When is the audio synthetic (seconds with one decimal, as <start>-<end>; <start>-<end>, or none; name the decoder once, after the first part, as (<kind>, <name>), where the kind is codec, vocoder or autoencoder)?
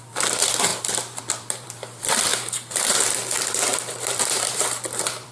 0.0-2.3 (vocoder, BigVGAN v2); 3.2-5.3